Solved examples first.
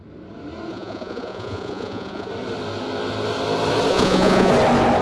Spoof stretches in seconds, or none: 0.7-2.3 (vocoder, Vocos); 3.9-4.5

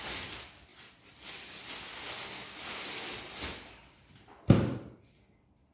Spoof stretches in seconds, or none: none

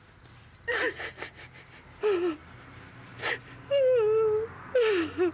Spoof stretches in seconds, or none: 2.4-3.3 (vocoder, BigVGAN v2)

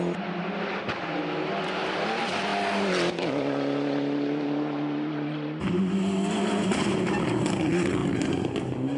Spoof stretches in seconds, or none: none

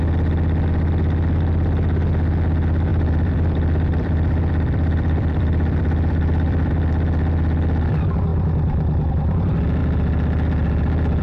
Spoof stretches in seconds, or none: 2.9-6.7 (vocoder, BigVGAN v2)

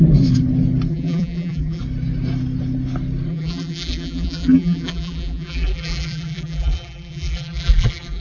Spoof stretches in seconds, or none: 0.9-1.8 (vocoder, BigVGAN v2); 3.3-8.2

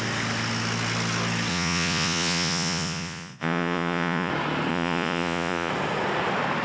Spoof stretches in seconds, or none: 1.5-4.3 (vocoder, Vocos); 4.7-5.7

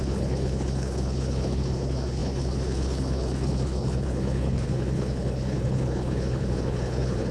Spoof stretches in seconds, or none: 0.0-7.3 (codec, HILCodec)